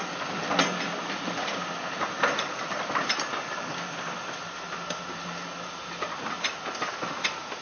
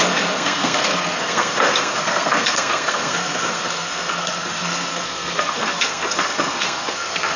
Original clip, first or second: first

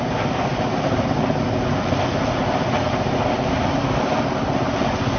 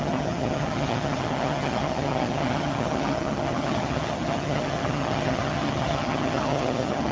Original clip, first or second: first